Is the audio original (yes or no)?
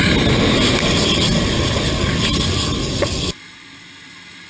yes